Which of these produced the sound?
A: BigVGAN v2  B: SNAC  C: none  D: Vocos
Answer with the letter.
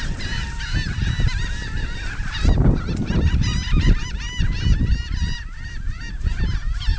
A